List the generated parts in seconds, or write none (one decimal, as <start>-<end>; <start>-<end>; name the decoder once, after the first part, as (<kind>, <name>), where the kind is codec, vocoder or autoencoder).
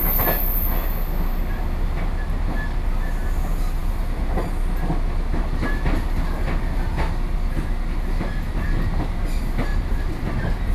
9.7-10.7 (vocoder, BigVGAN v2)